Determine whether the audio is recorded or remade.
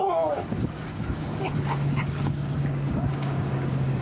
remade